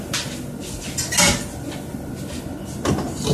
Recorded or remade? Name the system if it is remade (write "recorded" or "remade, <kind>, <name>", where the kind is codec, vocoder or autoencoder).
recorded